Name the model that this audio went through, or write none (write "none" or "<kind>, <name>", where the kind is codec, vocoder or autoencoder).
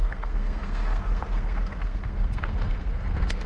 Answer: codec, SNAC